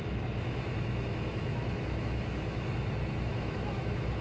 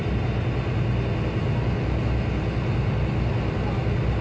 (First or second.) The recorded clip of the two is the second